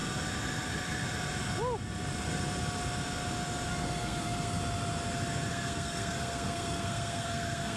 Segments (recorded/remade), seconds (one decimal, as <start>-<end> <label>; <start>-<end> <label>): 0.0-3.7 recorded; 3.7-4.6 remade; 4.6-5.5 recorded; 5.5-7.8 remade